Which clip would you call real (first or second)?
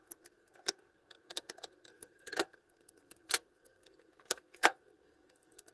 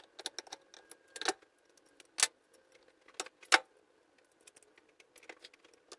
second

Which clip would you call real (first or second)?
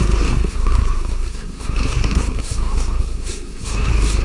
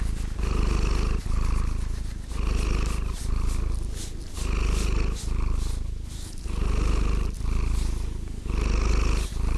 second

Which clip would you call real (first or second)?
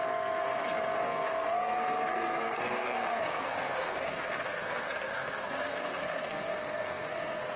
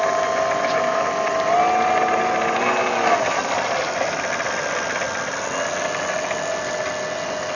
second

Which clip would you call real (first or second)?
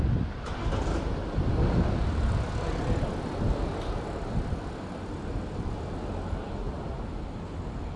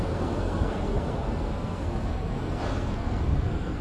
first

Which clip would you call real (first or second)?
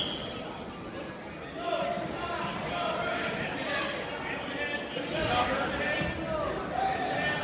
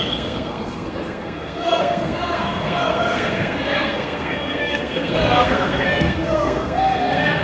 first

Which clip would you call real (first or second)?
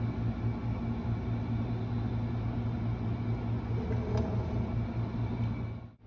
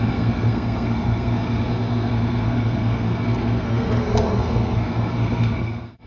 first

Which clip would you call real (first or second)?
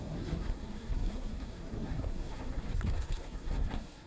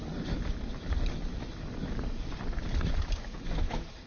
second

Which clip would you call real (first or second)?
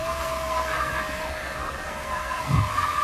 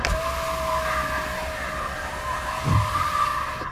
second